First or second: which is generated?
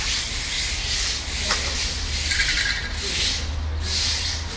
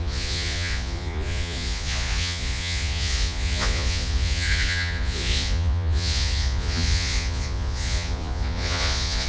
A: second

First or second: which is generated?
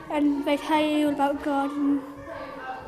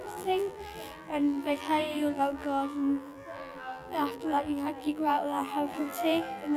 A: second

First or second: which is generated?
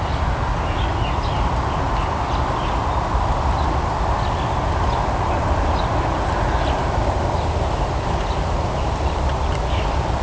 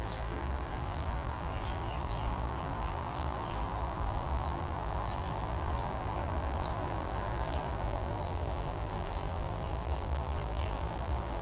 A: second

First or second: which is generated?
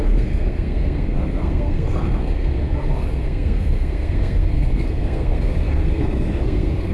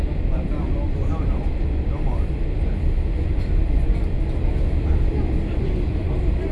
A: first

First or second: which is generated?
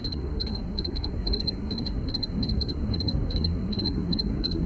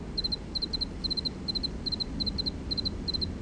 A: first